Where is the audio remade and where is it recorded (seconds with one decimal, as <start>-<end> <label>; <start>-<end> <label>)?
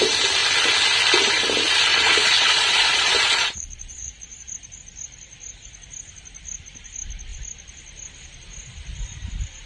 0.0-1.9 recorded; 1.9-4.5 remade; 4.5-9.7 recorded